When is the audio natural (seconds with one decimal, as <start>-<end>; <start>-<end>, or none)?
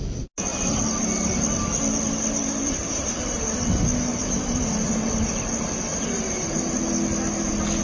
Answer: 0.0-2.8; 3.4-4.1; 4.9-5.9; 6.6-7.8